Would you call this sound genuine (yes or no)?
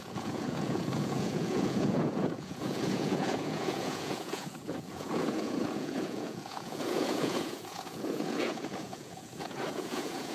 no